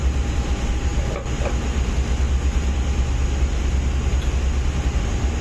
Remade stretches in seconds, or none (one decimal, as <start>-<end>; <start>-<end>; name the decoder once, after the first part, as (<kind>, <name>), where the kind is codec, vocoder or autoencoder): none